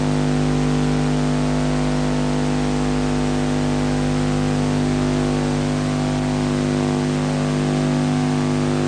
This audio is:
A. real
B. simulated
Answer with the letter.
A